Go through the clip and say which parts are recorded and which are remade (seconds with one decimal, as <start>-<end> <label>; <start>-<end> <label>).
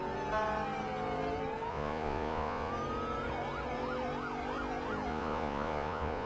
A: 0.0-1.7 recorded; 1.7-2.7 remade; 2.7-5.1 recorded; 5.1-6.3 remade